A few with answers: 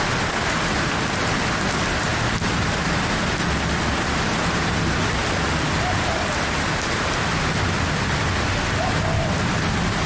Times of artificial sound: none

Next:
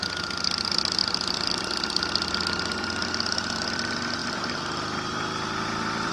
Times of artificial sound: none

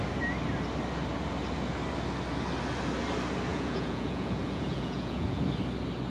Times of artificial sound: 3.5-5.4 (vocoder, Vocos)

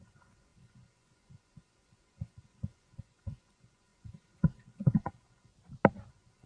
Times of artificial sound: 0.0-5.5 (vocoder, Vocos); 6.1-6.5